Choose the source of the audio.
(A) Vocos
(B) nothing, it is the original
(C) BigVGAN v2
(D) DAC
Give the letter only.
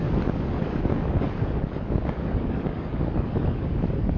D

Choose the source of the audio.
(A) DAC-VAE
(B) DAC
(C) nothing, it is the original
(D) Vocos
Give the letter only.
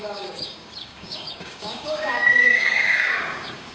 B